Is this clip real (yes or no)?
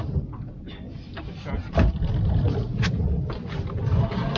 yes